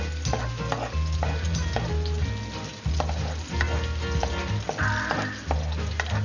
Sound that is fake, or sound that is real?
real